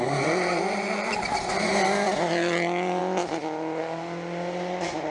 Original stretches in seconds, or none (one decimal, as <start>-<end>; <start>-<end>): 0.0-5.1